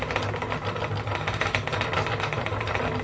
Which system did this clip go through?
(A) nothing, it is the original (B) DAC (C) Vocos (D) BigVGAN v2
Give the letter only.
A